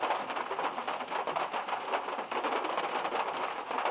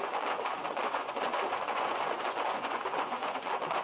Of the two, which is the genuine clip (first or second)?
first